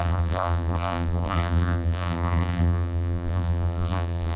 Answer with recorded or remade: remade